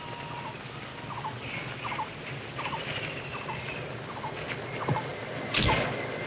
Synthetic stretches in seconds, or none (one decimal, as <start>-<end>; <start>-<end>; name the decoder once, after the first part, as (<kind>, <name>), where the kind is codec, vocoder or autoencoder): none